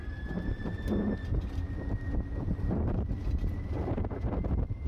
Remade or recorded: recorded